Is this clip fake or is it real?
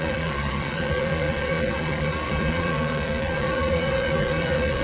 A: fake